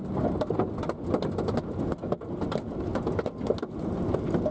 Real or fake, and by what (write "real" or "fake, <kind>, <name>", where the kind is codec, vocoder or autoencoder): real